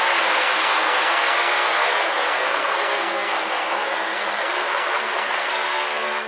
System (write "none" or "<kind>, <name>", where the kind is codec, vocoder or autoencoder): codec, SNAC